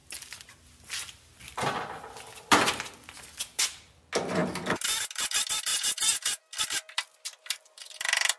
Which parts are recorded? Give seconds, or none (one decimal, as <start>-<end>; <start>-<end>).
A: 0.0-5.7; 6.4-8.4